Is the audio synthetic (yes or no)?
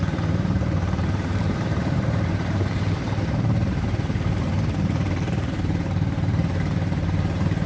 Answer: yes